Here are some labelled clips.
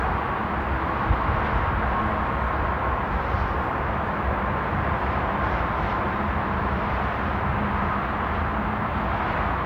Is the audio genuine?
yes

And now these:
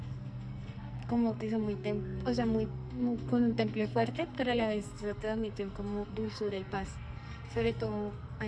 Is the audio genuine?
no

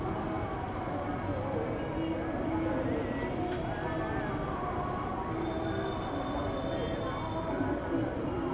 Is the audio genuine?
yes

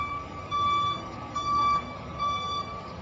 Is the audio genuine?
no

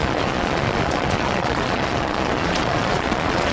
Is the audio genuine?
no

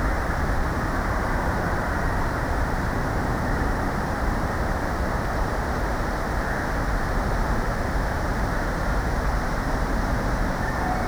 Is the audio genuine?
no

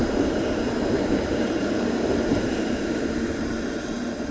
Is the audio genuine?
no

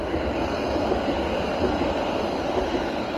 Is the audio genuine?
yes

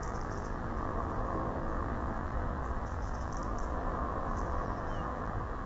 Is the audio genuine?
no